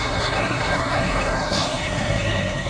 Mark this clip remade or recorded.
remade